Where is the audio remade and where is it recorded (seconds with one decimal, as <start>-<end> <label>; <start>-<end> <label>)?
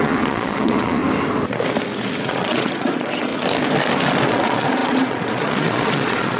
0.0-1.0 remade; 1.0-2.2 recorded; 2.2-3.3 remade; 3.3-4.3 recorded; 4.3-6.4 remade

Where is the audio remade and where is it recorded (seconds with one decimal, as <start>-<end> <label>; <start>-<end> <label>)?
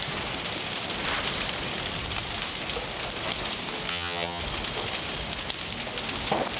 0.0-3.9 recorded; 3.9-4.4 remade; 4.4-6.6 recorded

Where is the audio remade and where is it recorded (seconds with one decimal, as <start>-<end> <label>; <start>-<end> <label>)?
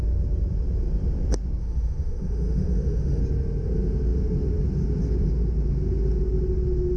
0.0-1.6 recorded; 1.6-3.2 remade; 3.2-7.0 recorded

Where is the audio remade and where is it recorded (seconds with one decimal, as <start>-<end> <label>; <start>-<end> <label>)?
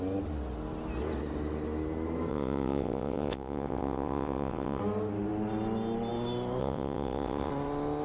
0.0-2.3 recorded; 2.3-4.8 remade; 4.8-6.6 recorded; 6.6-7.5 remade; 7.5-8.0 recorded